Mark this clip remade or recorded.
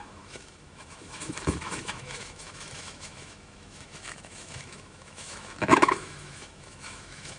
remade